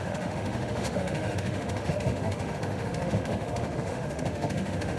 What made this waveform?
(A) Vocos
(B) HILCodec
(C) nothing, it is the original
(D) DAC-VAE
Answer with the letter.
D